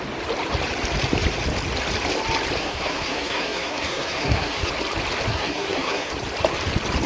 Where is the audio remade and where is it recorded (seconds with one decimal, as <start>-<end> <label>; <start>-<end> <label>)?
0.0-2.6 recorded; 2.6-4.7 remade; 4.7-5.3 recorded; 5.3-6.1 remade; 6.1-7.1 recorded